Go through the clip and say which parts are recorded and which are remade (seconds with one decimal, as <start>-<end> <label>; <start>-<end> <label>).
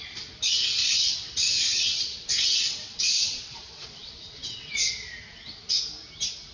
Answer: 0.0-0.8 recorded; 0.8-4.7 remade; 4.7-6.5 recorded